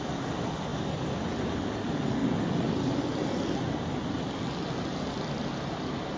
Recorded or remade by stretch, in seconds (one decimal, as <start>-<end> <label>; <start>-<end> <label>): 0.0-6.2 recorded